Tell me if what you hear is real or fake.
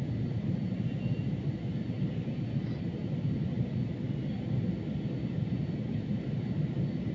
real